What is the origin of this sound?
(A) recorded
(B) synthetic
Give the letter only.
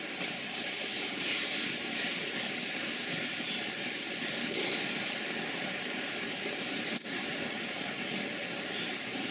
B